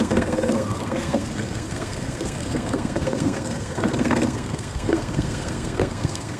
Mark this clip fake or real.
fake